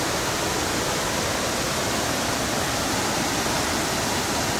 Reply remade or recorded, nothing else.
recorded